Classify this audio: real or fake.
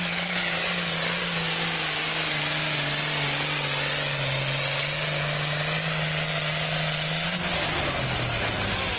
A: real